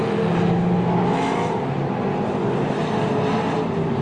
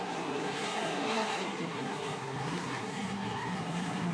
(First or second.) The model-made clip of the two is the second